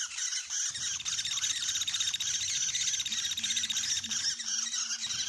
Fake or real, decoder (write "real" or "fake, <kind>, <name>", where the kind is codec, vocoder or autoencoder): real